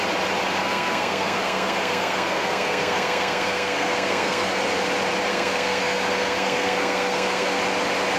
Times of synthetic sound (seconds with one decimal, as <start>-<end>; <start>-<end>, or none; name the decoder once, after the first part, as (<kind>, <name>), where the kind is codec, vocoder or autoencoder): 0.6-4.5 (codec, SNAC); 5.3-7.6